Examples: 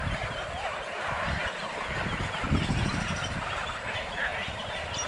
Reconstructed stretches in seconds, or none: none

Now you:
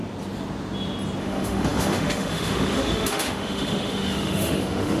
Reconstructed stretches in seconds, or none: 1.2-5.0

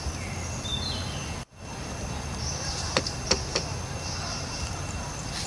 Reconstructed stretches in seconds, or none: none

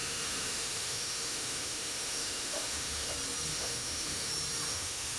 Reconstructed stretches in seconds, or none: 0.0-3.1; 3.5-4.3; 4.7-5.2

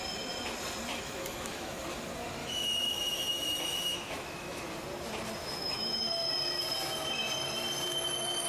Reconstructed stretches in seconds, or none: 0.9-1.8; 2.4-4.6; 5.4-6.0

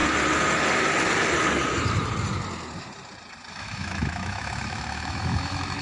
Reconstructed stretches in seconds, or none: 3.5-5.8